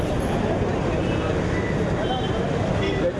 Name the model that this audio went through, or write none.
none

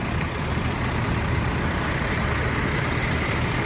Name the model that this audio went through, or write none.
vocoder, BigVGAN v2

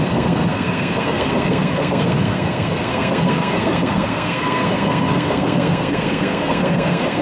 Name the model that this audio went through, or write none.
codec, SNAC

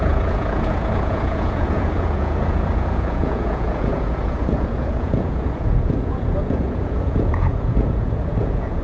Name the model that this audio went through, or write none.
vocoder, Vocos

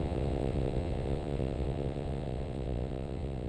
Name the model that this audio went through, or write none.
vocoder, WaveNeXt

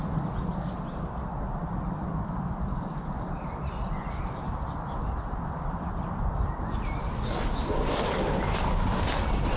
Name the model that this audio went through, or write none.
none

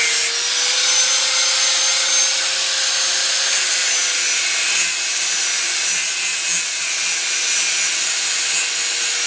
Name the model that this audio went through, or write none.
none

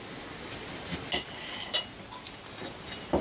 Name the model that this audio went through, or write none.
none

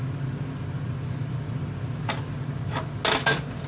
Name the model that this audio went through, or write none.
none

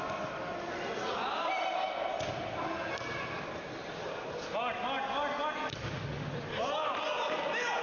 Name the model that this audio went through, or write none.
none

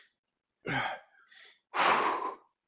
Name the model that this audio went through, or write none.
none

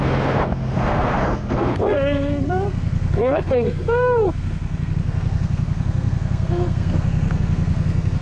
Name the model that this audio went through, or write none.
codec, SNAC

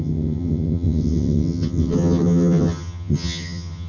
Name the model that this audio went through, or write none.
vocoder, HiFi-GAN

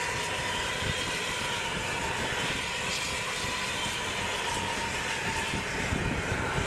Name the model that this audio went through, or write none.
none